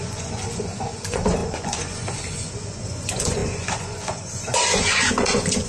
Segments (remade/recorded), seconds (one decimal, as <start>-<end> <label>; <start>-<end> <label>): 0.0-5.7 remade